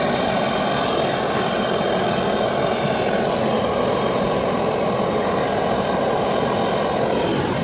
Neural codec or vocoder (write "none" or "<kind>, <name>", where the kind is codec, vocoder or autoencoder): none